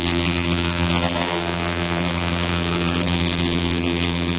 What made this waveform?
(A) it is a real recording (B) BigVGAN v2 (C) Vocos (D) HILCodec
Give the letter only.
B